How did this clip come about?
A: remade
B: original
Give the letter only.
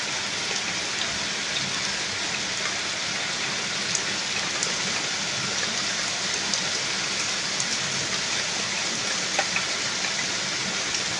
B